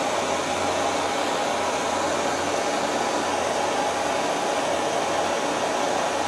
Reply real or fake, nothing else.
real